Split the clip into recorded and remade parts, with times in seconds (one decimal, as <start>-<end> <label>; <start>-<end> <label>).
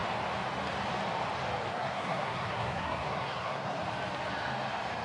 0.0-1.7 recorded; 1.7-3.8 remade; 3.8-5.0 recorded